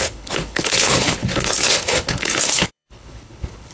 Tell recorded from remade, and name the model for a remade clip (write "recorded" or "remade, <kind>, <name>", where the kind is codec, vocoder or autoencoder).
remade, codec, HILCodec